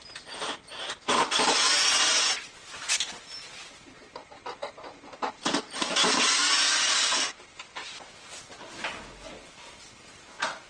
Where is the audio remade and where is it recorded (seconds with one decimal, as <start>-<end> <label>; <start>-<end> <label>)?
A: 0.0-10.7 recorded